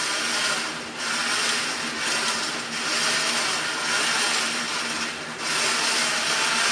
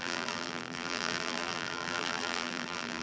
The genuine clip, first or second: first